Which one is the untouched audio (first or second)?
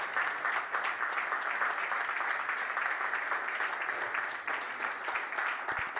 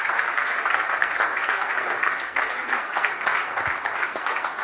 first